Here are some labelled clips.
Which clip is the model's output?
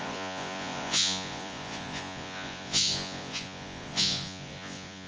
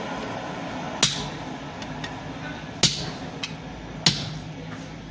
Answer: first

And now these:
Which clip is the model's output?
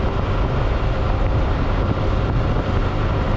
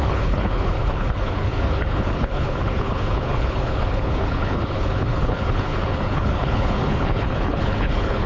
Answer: second